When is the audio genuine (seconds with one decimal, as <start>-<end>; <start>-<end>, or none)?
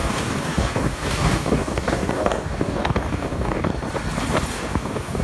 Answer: 3.7-4.5